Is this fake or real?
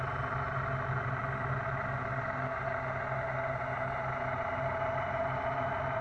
real